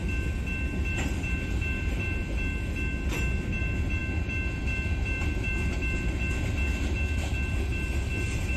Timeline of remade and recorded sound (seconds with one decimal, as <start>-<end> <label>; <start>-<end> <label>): 0.0-8.6 recorded